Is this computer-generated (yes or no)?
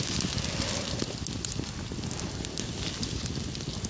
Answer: no